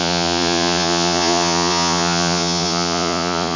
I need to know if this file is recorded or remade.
remade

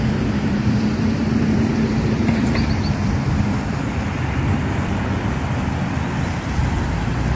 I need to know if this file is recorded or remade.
remade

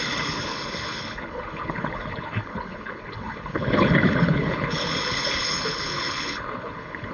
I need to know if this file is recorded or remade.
remade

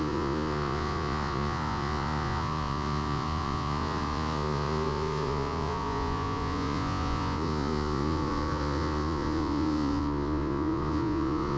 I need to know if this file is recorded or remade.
remade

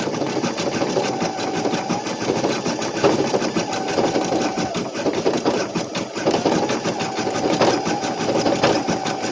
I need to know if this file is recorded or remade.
recorded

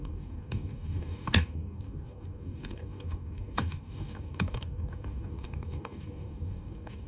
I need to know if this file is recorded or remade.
remade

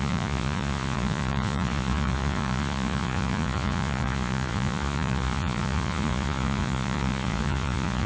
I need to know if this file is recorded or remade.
remade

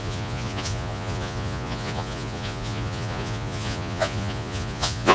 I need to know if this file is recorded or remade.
remade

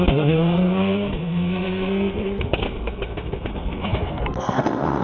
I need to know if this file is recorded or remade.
remade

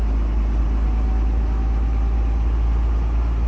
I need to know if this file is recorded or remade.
recorded